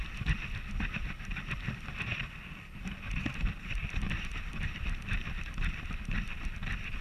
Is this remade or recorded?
recorded